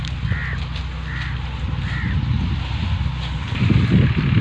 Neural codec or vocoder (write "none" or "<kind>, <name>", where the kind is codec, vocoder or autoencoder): none